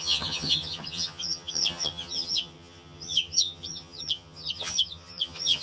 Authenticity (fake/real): fake